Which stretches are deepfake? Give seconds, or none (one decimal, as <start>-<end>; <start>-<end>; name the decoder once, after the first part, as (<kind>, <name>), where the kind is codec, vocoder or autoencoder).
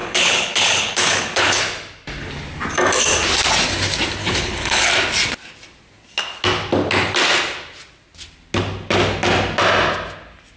0.0-1.6 (codec, HILCodec); 4.2-4.9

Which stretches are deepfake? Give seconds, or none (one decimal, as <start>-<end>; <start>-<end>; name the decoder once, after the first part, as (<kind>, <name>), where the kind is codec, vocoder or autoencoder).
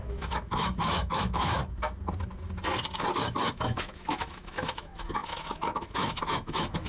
0.0-1.6 (autoencoder, DAC-VAE); 3.5-6.9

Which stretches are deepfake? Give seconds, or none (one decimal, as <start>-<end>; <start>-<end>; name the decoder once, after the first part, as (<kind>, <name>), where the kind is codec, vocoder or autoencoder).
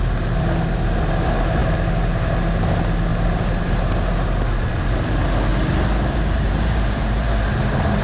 3.1-3.8 (vocoder, BigVGAN v2); 5.5-7.3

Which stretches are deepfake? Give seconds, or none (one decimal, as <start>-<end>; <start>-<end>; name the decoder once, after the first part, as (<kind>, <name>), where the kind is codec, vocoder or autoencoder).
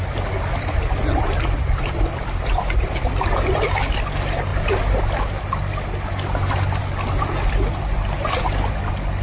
none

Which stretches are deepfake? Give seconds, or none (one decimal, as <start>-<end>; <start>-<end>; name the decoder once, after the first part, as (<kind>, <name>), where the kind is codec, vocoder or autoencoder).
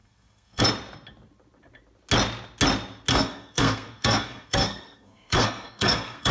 0.0-0.6 (codec, SNAC); 3.1-6.3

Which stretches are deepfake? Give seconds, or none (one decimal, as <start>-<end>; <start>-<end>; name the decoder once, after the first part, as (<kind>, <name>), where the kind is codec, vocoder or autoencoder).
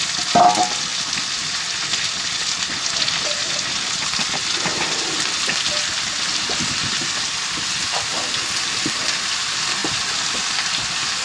4.7-5.5 (vocoder, BigVGAN v2)